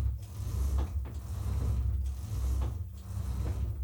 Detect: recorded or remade recorded